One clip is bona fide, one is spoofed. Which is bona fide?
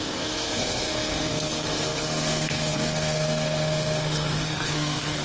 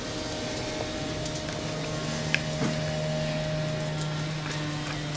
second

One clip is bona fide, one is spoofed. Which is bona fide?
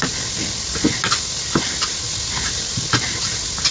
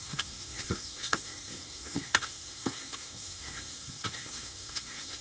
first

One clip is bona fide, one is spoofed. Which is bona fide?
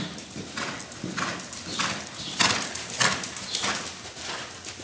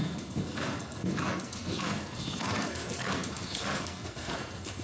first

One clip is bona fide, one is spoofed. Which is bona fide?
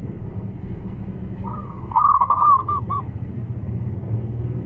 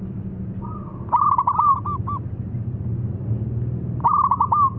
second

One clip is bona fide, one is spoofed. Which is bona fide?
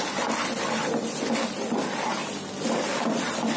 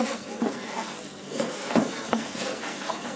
first